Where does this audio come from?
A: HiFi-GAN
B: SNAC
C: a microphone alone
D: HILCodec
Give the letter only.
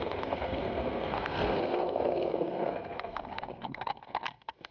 B